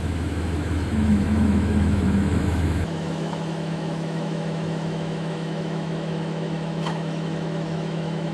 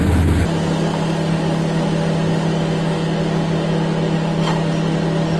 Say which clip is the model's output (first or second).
first